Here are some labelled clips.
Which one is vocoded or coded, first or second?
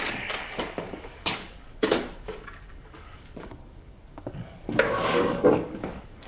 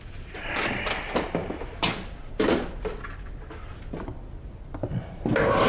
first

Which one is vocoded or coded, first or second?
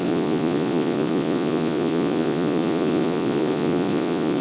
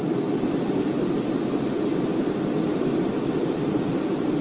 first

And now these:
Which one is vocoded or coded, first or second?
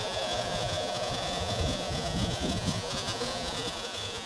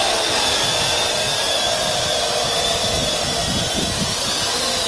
first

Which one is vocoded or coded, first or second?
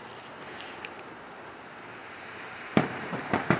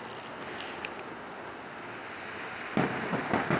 first